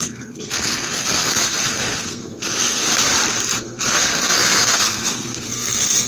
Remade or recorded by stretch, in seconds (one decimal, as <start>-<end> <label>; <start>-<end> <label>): 0.0-2.9 remade; 2.9-3.6 recorded; 3.6-6.1 remade